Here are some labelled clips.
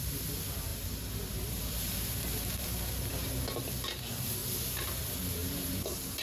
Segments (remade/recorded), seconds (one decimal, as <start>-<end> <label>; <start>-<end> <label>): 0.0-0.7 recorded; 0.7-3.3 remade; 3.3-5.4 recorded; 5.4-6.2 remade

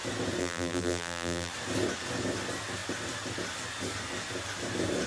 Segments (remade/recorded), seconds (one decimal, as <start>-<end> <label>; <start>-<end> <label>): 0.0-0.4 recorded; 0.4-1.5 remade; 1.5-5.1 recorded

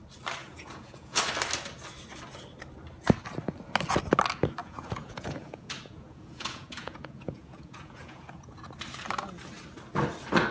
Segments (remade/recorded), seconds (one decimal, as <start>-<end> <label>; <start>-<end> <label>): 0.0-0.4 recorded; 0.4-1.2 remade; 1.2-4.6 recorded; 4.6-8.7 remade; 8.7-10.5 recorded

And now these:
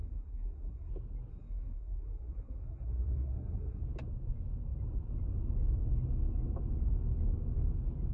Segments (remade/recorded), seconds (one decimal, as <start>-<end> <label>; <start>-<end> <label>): 0.0-0.9 remade; 0.9-1.3 recorded; 1.3-3.8 remade; 3.8-8.1 recorded